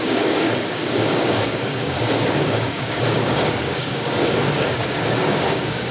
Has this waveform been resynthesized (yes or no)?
yes